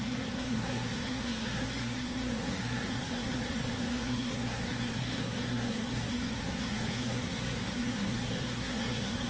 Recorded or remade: remade